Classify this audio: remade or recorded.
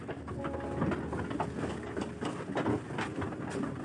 recorded